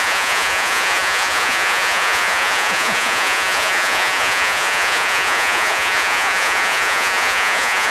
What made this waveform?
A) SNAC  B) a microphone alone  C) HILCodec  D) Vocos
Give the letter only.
D